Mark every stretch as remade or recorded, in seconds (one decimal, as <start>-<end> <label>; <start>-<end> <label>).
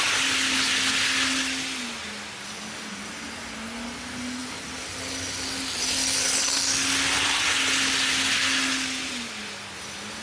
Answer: 0.0-10.2 recorded